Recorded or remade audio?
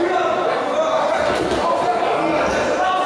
recorded